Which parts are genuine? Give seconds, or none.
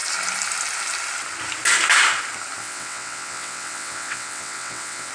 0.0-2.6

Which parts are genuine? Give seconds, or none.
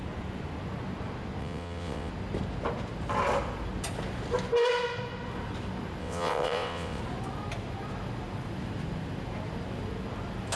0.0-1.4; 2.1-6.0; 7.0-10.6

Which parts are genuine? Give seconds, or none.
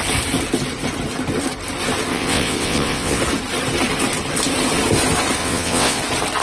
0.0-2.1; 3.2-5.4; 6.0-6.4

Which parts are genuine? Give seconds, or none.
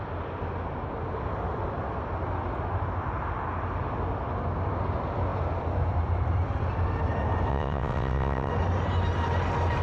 0.0-7.5; 8.5-9.8